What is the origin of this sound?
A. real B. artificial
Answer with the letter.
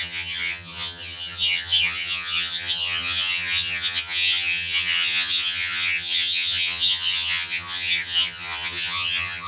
B